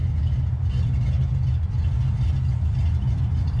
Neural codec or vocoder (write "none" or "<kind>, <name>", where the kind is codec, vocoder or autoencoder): none